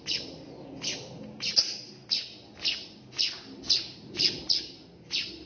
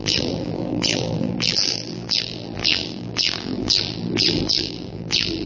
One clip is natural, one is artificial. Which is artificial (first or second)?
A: second